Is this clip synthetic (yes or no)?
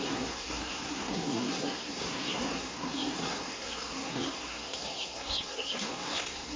yes